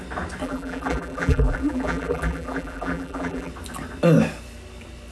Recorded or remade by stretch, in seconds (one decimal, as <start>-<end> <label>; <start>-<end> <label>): 0.0-0.4 recorded; 0.4-3.5 remade; 3.5-5.1 recorded